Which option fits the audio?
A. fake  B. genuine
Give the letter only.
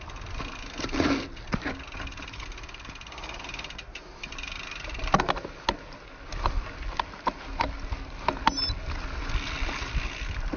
B